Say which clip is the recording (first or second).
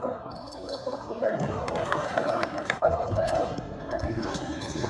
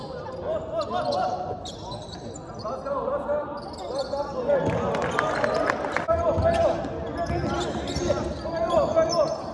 second